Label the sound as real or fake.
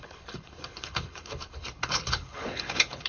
fake